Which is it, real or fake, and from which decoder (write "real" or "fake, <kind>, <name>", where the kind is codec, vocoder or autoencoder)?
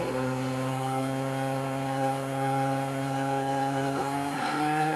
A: fake, codec, SNAC